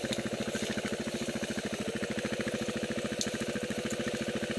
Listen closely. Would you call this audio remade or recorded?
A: recorded